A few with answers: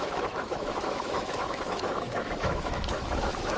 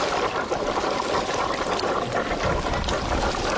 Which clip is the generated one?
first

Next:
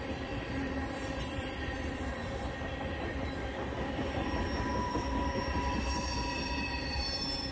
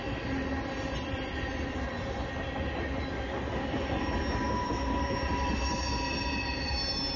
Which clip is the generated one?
first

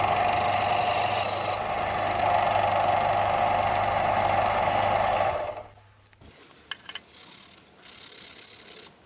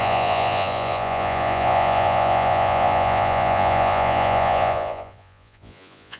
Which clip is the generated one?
second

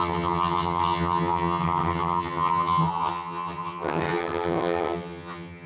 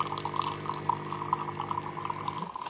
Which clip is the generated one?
first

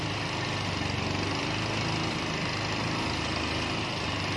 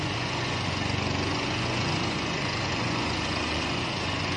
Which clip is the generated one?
second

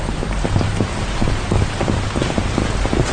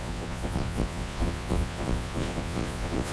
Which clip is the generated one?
second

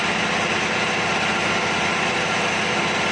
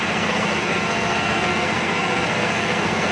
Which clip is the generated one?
second